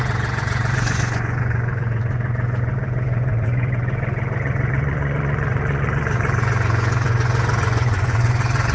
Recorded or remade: remade